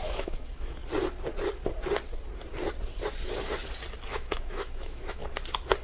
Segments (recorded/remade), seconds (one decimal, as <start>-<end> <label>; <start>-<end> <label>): 0.0-0.8 remade; 0.8-4.1 recorded; 4.1-5.2 remade; 5.2-5.8 recorded